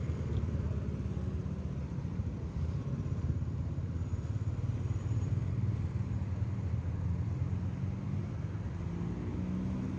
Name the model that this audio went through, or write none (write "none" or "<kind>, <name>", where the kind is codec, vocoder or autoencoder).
none